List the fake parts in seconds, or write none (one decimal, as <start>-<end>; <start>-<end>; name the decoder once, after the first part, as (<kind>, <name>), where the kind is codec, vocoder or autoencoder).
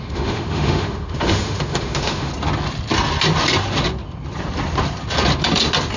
0.0-2.3 (autoencoder, DAC-VAE)